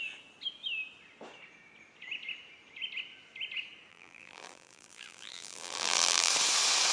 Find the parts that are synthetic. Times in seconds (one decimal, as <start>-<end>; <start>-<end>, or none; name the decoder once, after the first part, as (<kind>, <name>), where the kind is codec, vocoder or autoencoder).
3.9-6.3 (vocoder, BigVGAN v2)